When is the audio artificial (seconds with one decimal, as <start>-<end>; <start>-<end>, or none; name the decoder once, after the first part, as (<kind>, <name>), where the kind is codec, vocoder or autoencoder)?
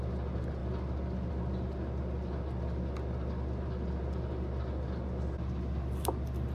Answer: none